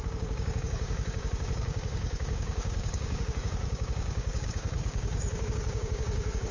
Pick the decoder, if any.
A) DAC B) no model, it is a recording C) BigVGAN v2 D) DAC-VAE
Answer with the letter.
A